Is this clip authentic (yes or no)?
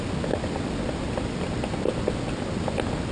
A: yes